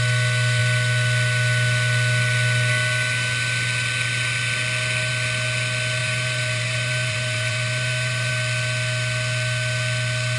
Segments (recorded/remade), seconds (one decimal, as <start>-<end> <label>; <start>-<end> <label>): 0.0-6.0 recorded; 6.0-8.3 remade; 8.3-10.4 recorded